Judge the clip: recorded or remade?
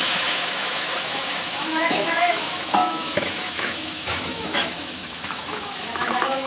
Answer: remade